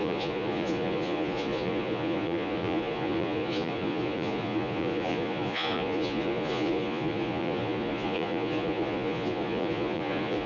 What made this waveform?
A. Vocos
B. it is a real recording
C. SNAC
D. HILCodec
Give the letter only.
A